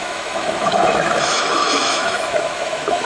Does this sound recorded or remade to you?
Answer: remade